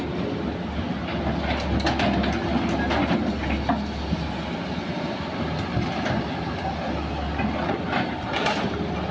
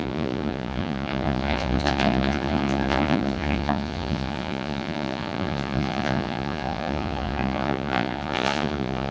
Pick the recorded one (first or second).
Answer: first